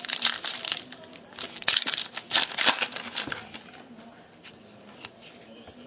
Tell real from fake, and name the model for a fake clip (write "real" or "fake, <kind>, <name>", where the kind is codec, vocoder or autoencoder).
real